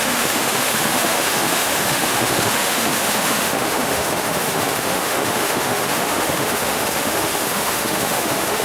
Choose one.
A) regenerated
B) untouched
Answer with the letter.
A